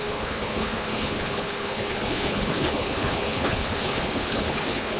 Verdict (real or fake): fake